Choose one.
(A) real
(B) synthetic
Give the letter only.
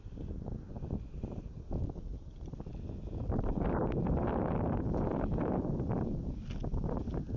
A